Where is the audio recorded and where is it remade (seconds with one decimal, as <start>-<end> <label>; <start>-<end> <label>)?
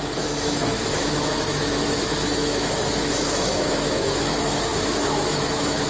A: 0.0-5.9 remade